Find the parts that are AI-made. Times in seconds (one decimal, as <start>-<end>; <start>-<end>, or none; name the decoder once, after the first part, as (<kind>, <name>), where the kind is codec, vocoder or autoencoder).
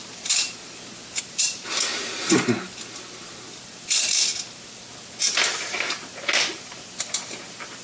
0.0-0.6 (vocoder, BigVGAN v2); 1.2-1.9; 5.9-7.8